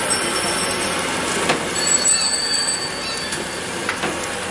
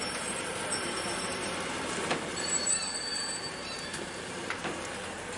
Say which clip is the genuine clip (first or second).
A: first